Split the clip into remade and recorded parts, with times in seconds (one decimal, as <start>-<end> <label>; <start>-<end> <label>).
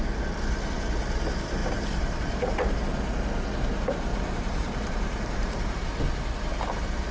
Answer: 0.0-1.6 recorded; 1.6-2.8 remade; 2.8-4.1 recorded; 4.1-5.8 remade; 5.8-7.1 recorded